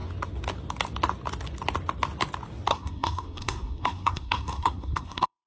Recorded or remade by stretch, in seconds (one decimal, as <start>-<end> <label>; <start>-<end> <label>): 0.0-2.7 recorded; 2.7-5.5 remade